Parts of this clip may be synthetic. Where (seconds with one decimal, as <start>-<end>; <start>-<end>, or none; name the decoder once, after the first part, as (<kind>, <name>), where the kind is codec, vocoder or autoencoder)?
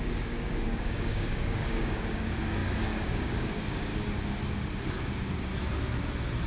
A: 0.0-3.9 (codec, DAC); 5.0-5.5